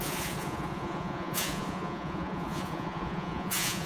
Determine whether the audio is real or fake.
fake